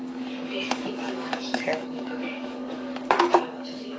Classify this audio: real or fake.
fake